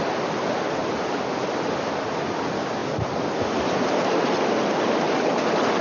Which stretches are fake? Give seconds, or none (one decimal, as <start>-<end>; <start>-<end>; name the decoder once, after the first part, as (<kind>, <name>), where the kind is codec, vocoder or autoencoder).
0.8-2.1 (vocoder, BigVGAN v2)

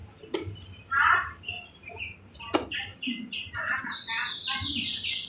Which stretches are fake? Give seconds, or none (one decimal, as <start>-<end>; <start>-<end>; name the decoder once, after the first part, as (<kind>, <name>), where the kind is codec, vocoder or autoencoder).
0.0-2.0 (vocoder, BigVGAN v2); 2.9-3.8

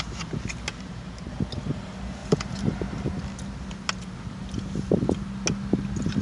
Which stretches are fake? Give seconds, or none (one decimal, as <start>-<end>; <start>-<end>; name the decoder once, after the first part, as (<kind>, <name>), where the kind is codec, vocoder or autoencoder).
0.7-1.3 (vocoder, BigVGAN v2)

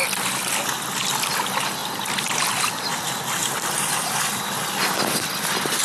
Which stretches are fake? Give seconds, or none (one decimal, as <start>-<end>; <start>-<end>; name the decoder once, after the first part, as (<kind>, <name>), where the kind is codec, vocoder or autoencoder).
0.0-0.6 (vocoder, BigVGAN v2); 1.8-2.7

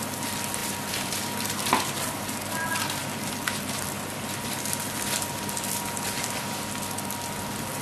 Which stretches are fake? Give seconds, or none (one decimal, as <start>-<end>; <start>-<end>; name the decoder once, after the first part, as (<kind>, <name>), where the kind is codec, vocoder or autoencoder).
0.6-2.2 (vocoder, BigVGAN v2); 3.0-7.8

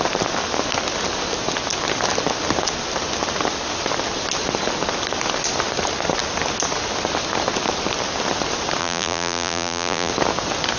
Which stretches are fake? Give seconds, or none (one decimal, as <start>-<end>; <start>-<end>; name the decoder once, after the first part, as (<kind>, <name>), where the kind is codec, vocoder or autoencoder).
8.8-10.1 (vocoder, BigVGAN v2)

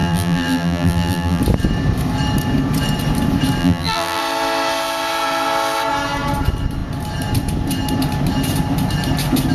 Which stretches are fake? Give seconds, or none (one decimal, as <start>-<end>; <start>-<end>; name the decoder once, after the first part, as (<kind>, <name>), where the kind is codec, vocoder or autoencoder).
0.0-1.4 (vocoder, BigVGAN v2); 3.6-4.2